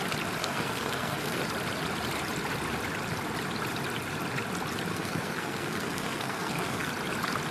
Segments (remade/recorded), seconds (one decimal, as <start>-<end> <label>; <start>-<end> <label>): 0.0-0.4 recorded; 0.4-1.4 remade; 1.4-4.9 recorded; 4.9-6.9 remade; 6.9-7.5 recorded